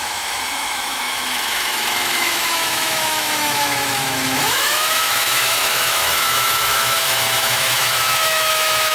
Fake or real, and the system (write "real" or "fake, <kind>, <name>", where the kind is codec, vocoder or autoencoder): fake, autoencoder, DAC-VAE